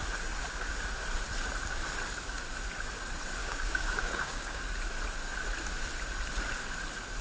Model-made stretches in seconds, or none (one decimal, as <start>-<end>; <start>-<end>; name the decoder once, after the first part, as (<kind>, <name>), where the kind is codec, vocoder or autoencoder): 3.4-4.6 (codec, DAC)